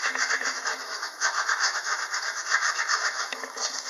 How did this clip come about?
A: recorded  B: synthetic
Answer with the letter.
B